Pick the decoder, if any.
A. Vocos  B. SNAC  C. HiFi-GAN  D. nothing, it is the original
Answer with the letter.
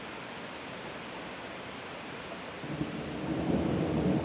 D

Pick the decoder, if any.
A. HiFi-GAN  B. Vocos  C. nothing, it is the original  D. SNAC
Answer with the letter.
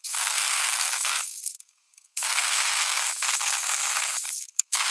D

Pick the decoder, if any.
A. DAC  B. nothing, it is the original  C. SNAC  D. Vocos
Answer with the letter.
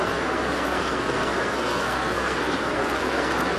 C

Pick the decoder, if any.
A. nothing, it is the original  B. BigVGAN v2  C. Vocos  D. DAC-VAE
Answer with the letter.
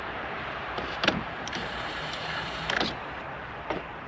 B